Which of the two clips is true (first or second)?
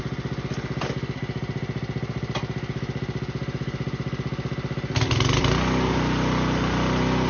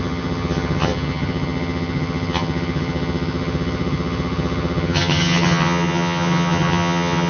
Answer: first